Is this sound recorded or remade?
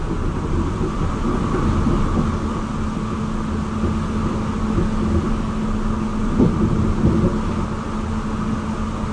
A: recorded